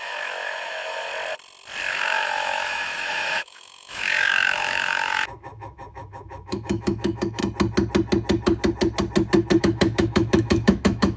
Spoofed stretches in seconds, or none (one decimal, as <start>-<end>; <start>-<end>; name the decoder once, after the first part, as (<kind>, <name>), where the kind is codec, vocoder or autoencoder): 0.0-1.1 (autoencoder, DAC-VAE); 1.9-7.4; 9.6-11.2

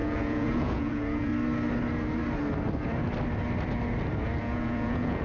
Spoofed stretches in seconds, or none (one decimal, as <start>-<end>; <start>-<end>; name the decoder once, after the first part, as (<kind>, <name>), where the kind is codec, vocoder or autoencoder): 0.0-1.3 (vocoder, Vocos); 4.4-5.2